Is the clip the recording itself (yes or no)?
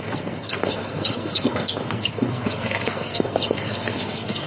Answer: no